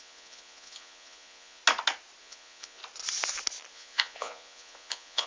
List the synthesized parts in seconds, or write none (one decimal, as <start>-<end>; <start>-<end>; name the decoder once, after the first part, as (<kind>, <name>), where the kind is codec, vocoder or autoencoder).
0.0-1.6 (vocoder, Vocos); 2.2-2.8; 3.7-5.3